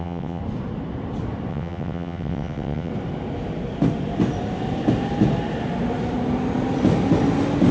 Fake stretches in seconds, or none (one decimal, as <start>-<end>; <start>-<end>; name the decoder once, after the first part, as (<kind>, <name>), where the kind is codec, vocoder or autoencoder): 0.0-0.4 (vocoder, WaveNeXt); 1.5-2.9